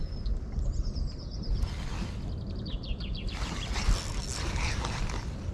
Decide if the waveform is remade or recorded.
recorded